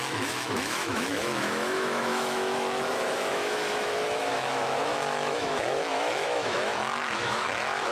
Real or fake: fake